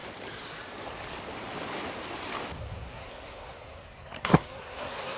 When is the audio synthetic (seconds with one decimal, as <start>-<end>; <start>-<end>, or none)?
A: 2.6-5.2